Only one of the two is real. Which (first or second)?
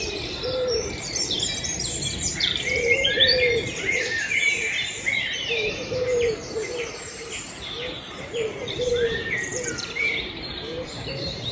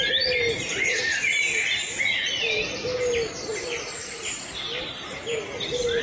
second